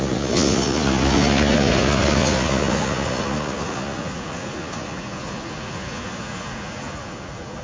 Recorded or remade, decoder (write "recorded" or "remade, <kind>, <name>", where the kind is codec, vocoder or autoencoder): remade, vocoder, Vocos